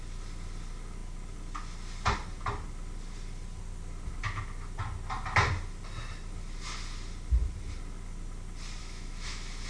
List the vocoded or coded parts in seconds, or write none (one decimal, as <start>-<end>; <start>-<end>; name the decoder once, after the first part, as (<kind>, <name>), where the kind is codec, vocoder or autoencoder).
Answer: 8.8-9.7 (autoencoder, DAC-VAE)